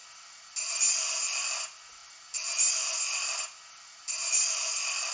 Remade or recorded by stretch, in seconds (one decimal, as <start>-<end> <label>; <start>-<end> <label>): 0.0-5.1 recorded